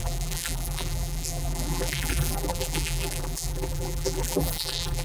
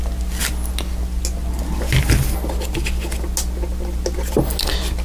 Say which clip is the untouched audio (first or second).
second